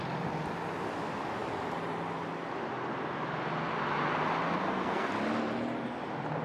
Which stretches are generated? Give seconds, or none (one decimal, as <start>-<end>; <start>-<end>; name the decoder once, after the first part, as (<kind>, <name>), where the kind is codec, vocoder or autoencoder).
4.6-5.1 (codec, SNAC)